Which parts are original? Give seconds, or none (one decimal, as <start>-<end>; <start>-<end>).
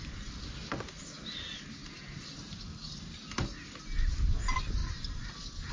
0.0-5.7